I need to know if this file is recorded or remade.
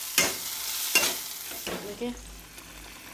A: recorded